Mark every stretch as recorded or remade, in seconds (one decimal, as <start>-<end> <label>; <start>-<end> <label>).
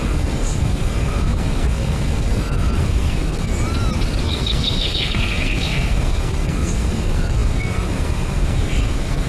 0.0-3.5 remade; 3.5-4.2 recorded; 4.2-9.3 remade